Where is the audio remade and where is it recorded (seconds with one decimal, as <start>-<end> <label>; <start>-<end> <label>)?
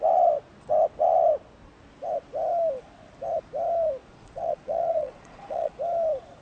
0.0-4.0 recorded; 4.0-5.7 remade; 5.7-6.4 recorded